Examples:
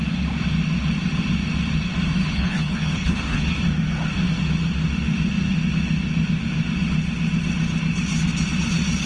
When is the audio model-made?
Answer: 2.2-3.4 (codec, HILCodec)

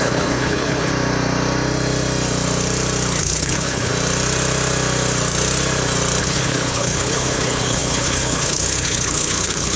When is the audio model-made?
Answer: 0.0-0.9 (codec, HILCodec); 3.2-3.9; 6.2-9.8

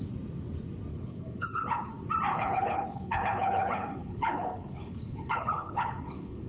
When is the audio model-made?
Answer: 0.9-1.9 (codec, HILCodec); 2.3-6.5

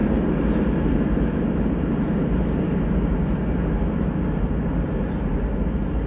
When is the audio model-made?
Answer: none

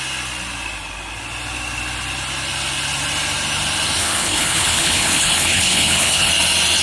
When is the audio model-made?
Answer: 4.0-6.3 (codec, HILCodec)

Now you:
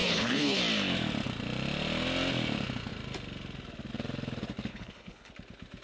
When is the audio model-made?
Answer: 0.0-0.6 (codec, HILCodec); 4.7-5.3

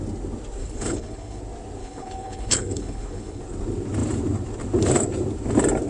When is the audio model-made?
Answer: 0.6-1.4 (codec, HILCodec); 1.8-3.4

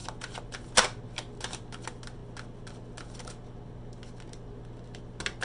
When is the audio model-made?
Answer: none